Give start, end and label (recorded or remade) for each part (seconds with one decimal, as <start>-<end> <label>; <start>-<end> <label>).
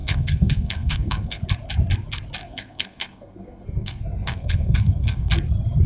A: 0.0-1.4 remade; 1.4-2.4 recorded; 2.4-5.3 remade; 5.3-5.9 recorded